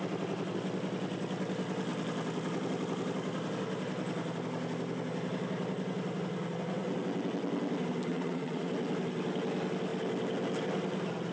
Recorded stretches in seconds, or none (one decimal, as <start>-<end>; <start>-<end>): 0.0-8.1; 8.7-11.3